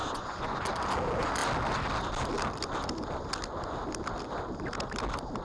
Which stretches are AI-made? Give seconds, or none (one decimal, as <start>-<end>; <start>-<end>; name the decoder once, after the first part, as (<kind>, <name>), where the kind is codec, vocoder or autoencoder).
0.0-0.6 (vocoder, Vocos)